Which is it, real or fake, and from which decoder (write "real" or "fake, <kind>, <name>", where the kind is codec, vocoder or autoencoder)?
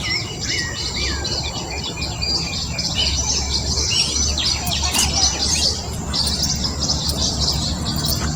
real